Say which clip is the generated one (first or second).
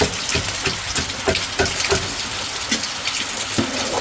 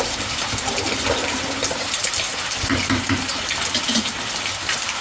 second